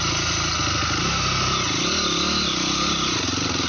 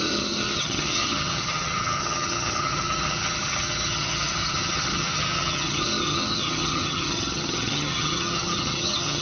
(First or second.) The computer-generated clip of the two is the second